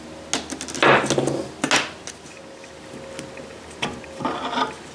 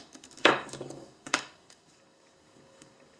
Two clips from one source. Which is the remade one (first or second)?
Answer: second